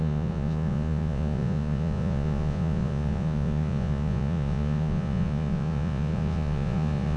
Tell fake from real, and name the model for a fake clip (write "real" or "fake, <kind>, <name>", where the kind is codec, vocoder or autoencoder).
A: fake, vocoder, Vocos